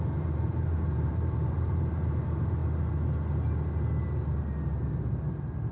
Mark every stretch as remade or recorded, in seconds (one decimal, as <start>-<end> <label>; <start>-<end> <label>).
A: 0.0-2.6 remade; 2.6-5.7 recorded